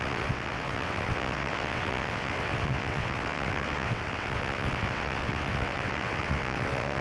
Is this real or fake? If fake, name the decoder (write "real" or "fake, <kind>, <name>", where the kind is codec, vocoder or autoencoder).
fake, vocoder, WaveNeXt